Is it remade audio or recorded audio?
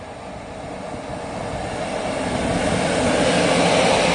recorded